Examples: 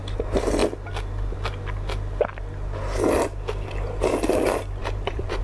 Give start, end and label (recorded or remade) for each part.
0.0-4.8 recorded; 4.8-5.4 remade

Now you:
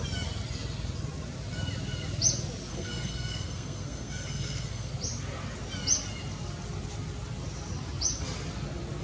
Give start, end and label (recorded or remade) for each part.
0.0-2.7 recorded; 2.7-4.9 remade; 4.9-9.0 recorded

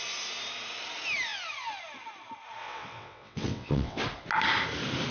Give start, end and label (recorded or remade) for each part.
0.0-2.6 recorded; 2.6-4.0 remade; 4.0-5.1 recorded